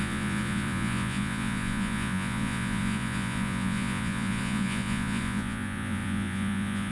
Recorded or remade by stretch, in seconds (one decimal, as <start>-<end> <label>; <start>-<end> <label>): 0.0-6.9 remade